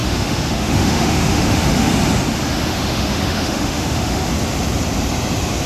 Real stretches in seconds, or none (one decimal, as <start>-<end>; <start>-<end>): 1.9-2.7; 4.3-5.7